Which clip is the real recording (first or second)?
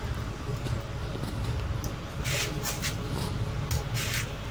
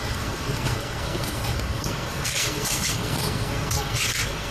first